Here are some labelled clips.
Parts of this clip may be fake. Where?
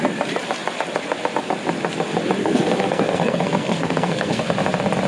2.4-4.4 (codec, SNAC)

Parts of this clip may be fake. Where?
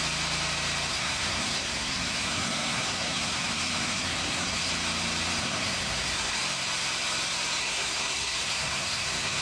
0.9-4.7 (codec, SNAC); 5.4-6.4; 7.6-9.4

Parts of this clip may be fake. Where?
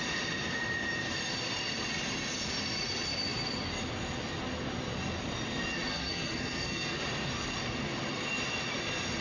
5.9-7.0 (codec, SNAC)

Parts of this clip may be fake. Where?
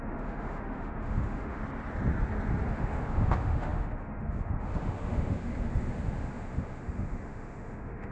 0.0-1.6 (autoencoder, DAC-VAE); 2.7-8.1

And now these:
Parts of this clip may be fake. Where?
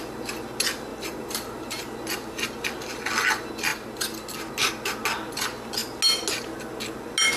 0.9-1.9 (vocoder, BigVGAN v2)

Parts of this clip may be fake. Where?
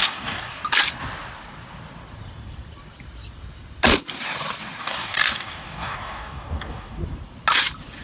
0.0-0.5 (codec, DAC); 4.8-7.0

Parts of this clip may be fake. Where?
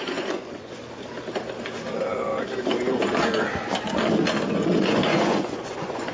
0.0-0.8 (vocoder, Vocos); 4.5-6.1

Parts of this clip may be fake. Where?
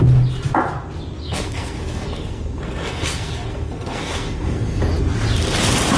1.2-4.8 (codec, SNAC)